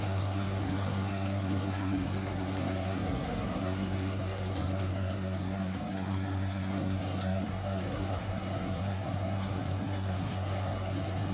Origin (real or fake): fake